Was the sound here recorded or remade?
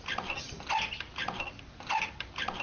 recorded